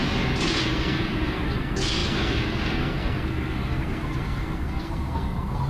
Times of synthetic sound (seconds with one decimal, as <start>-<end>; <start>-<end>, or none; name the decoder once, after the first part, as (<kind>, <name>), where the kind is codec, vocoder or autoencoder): 0.6-5.7 (codec, SNAC)